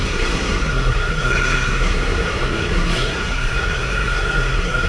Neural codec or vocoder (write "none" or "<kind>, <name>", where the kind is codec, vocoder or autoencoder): codec, SNAC